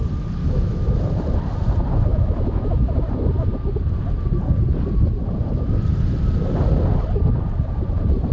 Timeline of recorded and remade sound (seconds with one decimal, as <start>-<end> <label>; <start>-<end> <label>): 0.0-0.4 recorded; 0.4-1.0 remade; 1.0-2.1 recorded; 2.1-2.9 remade; 2.9-8.3 recorded